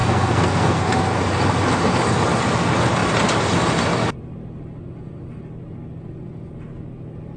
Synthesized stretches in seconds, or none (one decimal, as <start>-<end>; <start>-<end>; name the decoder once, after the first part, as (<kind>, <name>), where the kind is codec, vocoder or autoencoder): 0.0-0.8 (codec, SNAC)